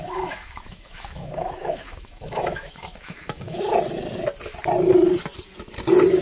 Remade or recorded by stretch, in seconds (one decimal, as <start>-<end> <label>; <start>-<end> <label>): 0.0-3.6 remade; 3.6-6.2 recorded